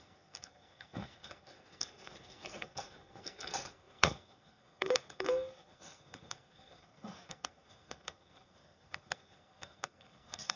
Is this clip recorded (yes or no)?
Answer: no